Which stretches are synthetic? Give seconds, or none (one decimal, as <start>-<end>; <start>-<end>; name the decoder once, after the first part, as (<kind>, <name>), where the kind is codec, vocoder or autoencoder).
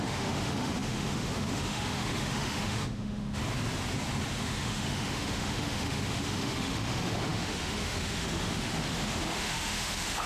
0.0-3.4 (autoencoder, DAC-VAE); 4.4-10.3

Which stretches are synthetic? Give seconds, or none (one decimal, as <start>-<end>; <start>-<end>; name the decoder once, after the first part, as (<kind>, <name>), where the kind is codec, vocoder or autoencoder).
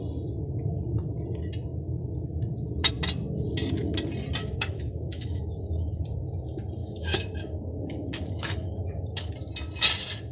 4.4-6.0 (autoencoder, DAC-VAE); 6.8-9.3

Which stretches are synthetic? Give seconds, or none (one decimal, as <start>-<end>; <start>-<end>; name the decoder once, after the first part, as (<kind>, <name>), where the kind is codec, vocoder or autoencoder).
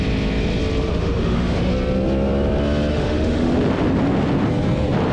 0.9-1.7 (autoencoder, DAC-VAE); 2.9-3.5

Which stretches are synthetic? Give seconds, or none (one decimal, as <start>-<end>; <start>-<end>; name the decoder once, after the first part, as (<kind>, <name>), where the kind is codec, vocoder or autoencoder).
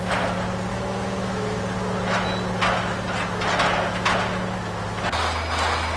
0.7-1.6 (autoencoder, DAC-VAE)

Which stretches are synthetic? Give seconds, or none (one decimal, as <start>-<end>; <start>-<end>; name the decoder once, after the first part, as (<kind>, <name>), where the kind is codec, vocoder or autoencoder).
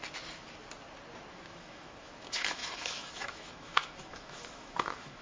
1.3-5.2 (autoencoder, DAC-VAE)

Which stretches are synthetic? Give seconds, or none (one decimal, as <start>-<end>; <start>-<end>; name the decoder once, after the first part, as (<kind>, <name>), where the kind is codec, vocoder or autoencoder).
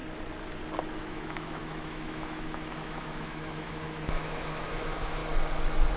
1.0-5.2 (autoencoder, DAC-VAE)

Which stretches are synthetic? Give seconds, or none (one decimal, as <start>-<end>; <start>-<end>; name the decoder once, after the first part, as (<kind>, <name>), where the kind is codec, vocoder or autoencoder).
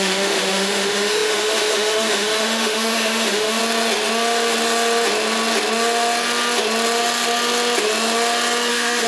0.0-3.6 (autoencoder, DAC-VAE); 8.7-9.1